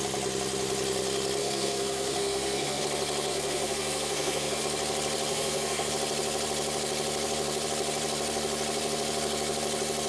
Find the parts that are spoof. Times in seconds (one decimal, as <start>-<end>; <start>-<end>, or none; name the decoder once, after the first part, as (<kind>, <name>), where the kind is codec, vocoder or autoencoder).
1.4-2.8 (codec, SNAC); 3.3-4.6; 5.3-5.9